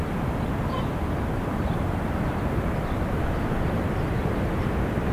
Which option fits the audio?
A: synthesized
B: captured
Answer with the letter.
B